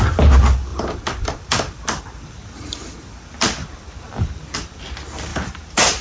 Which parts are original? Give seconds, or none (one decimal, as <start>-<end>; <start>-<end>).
0.0-0.7; 4.3-5.3